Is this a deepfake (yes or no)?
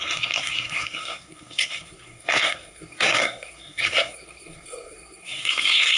yes